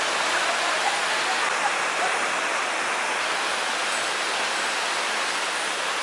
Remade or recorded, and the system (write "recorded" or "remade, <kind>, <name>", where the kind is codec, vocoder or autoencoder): recorded